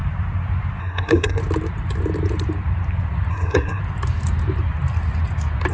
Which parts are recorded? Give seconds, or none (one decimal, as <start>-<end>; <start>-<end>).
0.0-0.8; 1.4-3.3; 3.8-5.7